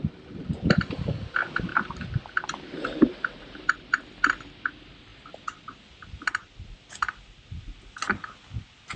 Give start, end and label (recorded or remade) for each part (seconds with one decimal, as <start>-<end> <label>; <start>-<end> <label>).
0.0-9.0 recorded